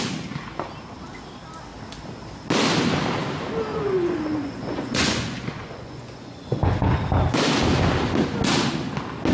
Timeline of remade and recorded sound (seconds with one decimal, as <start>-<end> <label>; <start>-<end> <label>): 0.0-3.7 recorded; 3.7-6.9 remade; 6.9-9.3 recorded